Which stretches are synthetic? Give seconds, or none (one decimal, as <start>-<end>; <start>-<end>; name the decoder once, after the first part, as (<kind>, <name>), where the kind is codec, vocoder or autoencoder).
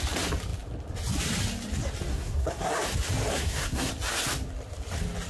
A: 2.1-2.7 (codec, SNAC); 3.3-3.9